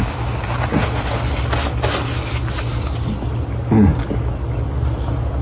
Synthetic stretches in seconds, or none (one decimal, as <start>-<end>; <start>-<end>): none